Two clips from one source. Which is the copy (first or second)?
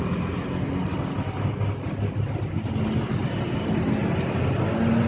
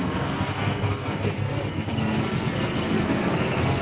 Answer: second